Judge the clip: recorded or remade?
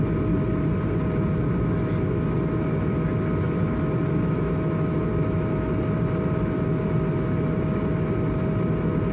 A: recorded